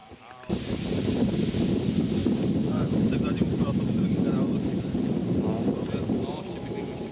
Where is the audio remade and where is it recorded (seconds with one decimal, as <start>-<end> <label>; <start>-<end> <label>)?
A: 0.0-2.2 recorded; 2.2-4.5 remade; 4.5-5.2 recorded; 5.2-6.4 remade; 6.4-7.1 recorded